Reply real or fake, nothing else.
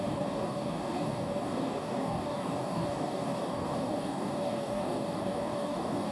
fake